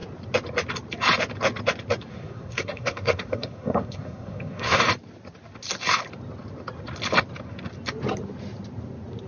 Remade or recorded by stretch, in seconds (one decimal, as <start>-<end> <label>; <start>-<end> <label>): 0.0-2.1 recorded; 2.1-4.8 remade; 4.8-9.3 recorded